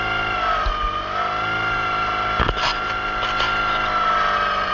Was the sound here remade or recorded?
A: recorded